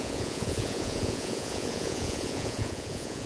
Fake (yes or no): yes